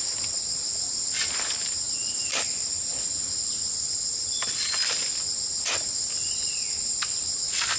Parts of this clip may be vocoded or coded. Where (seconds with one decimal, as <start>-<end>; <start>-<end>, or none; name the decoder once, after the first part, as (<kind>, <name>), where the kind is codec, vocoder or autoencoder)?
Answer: none